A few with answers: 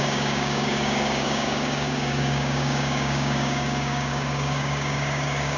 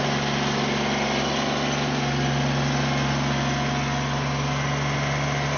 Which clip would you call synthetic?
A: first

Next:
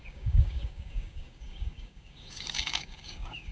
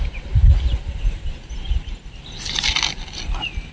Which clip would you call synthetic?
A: first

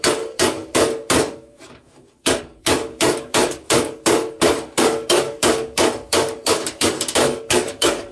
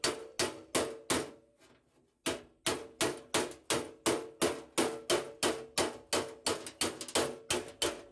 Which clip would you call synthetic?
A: first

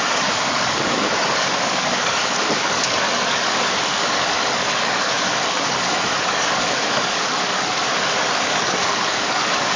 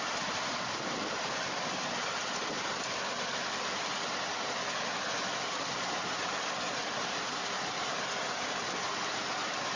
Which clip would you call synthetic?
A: first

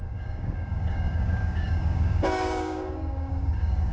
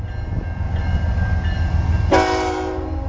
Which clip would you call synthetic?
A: first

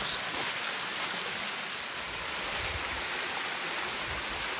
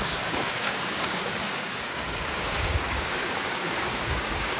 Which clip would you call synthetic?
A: second